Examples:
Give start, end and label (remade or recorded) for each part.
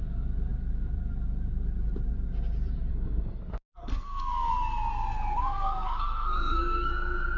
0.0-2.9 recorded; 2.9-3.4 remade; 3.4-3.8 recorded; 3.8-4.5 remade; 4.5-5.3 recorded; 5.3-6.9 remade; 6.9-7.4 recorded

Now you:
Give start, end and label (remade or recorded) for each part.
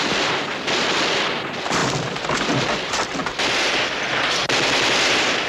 0.0-4.4 remade; 4.4-5.5 recorded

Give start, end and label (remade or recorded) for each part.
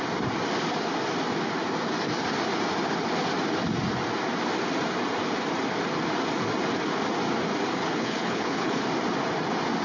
0.0-7.8 recorded; 7.8-8.8 remade; 8.8-9.8 recorded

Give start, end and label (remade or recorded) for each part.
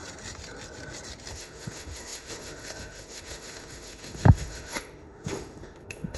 0.0-1.3 recorded; 1.3-6.2 remade